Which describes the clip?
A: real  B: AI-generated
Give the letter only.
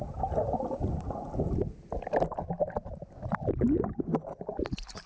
A